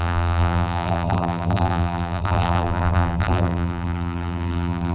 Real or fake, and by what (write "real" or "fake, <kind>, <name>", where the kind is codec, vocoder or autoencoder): fake, vocoder, BigVGAN v2